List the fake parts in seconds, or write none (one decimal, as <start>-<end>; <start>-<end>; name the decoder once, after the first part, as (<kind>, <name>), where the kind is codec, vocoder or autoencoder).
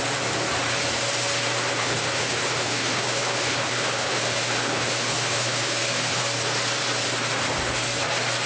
1.8-6.2 (codec, HILCodec)